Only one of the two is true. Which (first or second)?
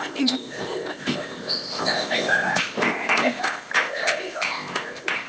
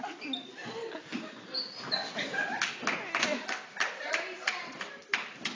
second